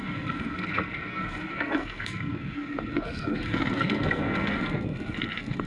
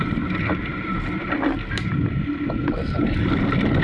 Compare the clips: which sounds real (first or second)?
second